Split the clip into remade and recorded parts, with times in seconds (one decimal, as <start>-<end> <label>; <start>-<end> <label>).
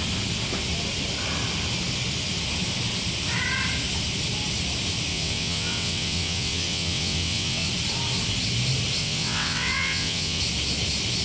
0.0-5.1 recorded; 5.1-7.7 remade; 7.7-9.0 recorded; 9.0-10.4 remade; 10.4-11.2 recorded